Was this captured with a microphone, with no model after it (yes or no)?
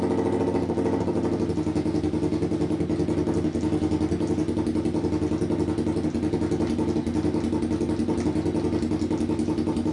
yes